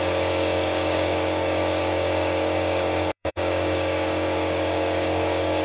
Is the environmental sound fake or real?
fake